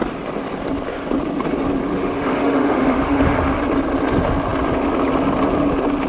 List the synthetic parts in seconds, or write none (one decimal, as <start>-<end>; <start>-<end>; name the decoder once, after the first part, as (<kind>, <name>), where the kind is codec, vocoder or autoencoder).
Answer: 1.9-3.6 (autoencoder, DAC-VAE)